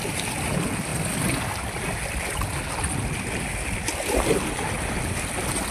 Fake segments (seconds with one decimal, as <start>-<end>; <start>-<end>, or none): none